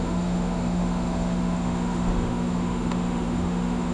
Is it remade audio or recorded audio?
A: remade